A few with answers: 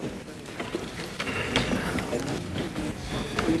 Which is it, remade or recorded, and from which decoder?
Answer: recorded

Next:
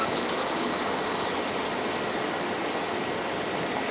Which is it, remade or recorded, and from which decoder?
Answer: recorded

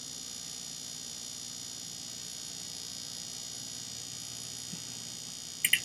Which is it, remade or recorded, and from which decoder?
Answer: recorded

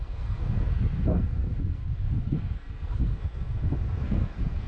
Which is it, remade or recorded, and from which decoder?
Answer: remade, codec, SNAC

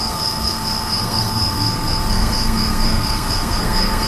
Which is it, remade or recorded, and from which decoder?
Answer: remade, codec, SNAC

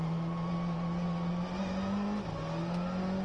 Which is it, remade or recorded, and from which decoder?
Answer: recorded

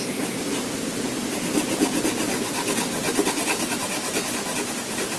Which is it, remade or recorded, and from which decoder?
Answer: recorded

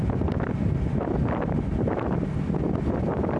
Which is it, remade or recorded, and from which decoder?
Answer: recorded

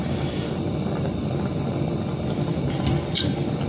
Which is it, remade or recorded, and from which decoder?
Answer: recorded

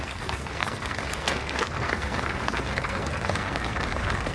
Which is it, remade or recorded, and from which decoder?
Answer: remade, codec, SNAC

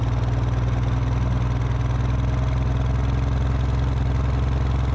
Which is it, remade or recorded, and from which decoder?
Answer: recorded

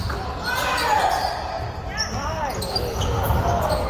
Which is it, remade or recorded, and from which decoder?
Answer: recorded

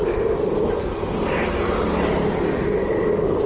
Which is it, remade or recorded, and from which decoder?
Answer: recorded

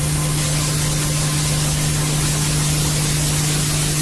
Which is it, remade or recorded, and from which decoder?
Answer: recorded